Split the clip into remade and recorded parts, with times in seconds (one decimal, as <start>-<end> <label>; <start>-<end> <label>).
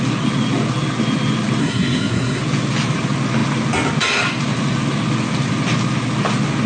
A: 0.0-1.6 recorded; 1.6-2.4 remade; 2.4-6.7 recorded